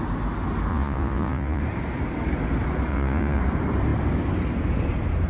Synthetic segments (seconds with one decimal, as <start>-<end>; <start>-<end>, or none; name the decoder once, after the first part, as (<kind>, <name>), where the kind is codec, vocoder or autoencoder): 0.7-1.6 (vocoder, Vocos); 2.9-3.4